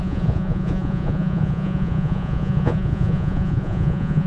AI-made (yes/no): yes